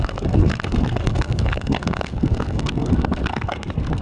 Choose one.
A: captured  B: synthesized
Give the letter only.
B